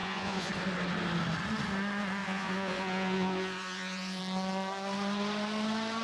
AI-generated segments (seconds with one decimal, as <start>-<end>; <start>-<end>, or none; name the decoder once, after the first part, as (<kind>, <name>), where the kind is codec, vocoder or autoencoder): 0.0-0.5 (vocoder, Vocos); 2.2-4.2